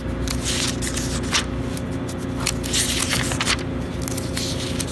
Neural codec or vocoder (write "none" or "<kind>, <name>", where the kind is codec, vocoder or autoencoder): none